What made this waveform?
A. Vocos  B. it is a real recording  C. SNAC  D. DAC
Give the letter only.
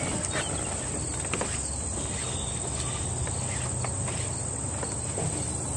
B